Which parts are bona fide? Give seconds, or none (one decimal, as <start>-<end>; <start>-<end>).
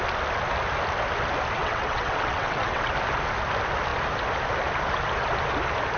0.0-1.6; 2.9-6.0